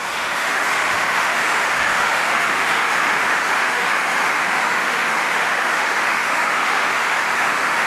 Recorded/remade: remade